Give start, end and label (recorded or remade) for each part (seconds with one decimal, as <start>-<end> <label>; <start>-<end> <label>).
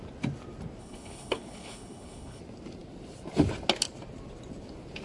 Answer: 0.0-0.8 recorded; 0.8-2.4 remade; 2.4-5.0 recorded